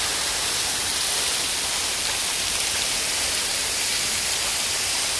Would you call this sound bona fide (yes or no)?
no